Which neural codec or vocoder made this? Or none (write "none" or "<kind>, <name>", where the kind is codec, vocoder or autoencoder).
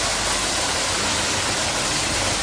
none